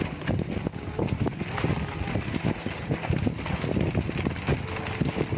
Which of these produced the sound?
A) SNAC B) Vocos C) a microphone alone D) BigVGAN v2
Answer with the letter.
C